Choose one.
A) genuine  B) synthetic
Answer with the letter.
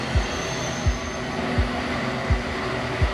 A